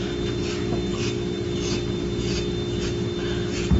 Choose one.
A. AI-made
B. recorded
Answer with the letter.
B